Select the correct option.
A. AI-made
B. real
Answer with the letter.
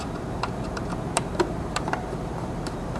A